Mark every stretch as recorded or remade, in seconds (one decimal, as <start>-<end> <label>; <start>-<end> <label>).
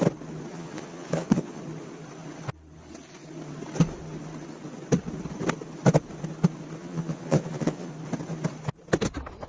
0.0-0.5 recorded; 0.5-1.6 remade; 1.6-6.8 recorded; 6.8-7.9 remade; 7.9-9.5 recorded